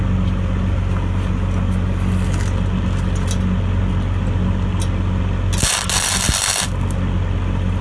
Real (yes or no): yes